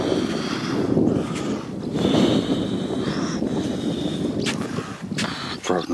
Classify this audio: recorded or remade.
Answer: recorded